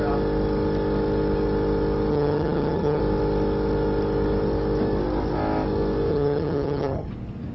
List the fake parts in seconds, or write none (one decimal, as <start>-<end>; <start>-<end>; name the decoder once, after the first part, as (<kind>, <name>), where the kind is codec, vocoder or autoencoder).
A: 2.1-3.0 (vocoder, HiFi-GAN); 6.1-7.1